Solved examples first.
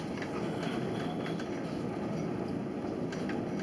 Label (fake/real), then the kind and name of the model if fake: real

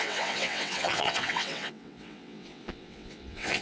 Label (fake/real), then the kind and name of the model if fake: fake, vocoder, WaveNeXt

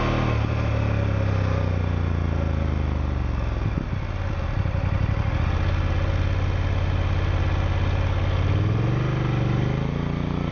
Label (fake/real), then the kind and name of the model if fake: real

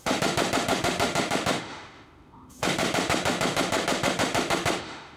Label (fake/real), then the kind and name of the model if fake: fake, autoencoder, DAC-VAE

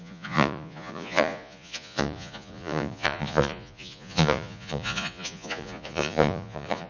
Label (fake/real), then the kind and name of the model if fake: fake, vocoder, Vocos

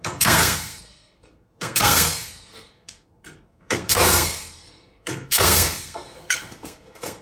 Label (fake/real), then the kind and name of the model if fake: fake, codec, SNAC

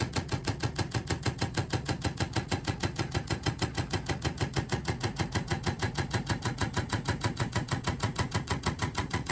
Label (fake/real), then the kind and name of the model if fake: fake, vocoder, Vocos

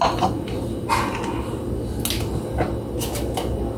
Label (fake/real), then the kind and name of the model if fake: real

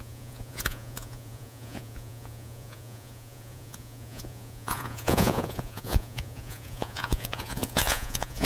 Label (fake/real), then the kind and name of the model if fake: fake, vocoder, Vocos